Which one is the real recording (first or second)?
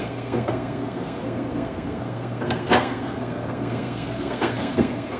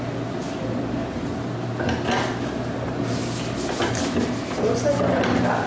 second